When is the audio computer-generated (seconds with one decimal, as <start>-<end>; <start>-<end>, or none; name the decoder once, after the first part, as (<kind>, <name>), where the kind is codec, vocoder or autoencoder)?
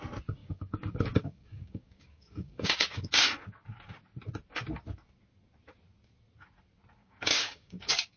0.4-3.0 (codec, DAC); 7.0-8.2